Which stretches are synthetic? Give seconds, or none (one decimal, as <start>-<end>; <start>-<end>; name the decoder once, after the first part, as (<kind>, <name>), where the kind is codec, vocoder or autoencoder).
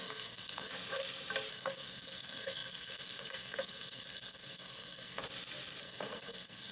0.0-0.7 (codec, SNAC); 1.5-5.2; 5.8-6.7